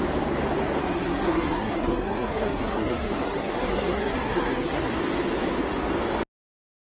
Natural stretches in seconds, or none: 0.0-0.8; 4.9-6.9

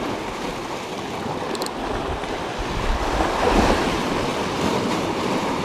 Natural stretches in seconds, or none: 0.5-3.9; 4.3-4.9

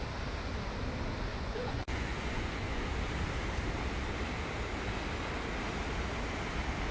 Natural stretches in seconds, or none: 0.0-1.3; 2.8-6.9

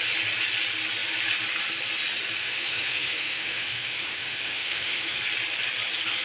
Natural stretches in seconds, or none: 0.0-2.4; 5.2-6.2

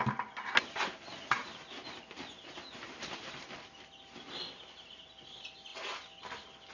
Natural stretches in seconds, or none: 0.0-6.7